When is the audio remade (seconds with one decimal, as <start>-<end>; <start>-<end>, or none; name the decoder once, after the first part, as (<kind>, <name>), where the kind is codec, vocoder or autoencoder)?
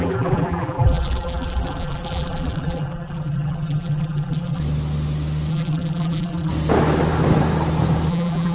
0.0-4.6 (vocoder, BigVGAN v2); 5.5-6.5; 8.1-8.5